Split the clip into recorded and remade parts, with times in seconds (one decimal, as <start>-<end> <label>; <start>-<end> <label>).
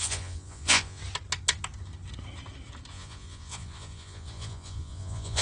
0.0-1.0 remade; 1.0-2.9 recorded; 2.9-5.4 remade